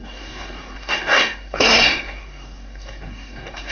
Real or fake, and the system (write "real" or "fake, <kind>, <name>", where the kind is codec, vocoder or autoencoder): fake, codec, SNAC